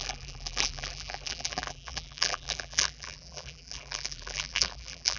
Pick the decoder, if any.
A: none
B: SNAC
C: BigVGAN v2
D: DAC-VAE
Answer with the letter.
C